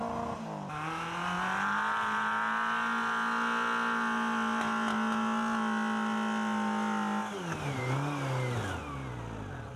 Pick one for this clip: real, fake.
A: real